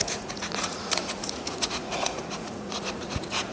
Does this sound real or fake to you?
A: fake